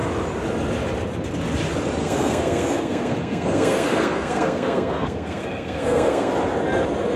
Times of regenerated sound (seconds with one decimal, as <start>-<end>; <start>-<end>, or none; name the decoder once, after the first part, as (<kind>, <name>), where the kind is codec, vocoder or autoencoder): 2.0-6.3 (codec, SNAC)